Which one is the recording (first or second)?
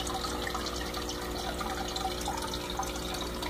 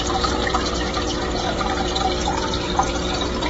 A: first